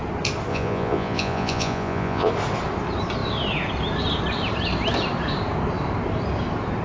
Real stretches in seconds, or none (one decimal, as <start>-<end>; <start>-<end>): 0.0-0.5; 2.3-6.8